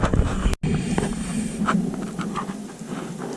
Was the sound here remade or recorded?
recorded